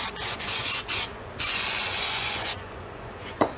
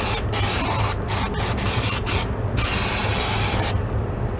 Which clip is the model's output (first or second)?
first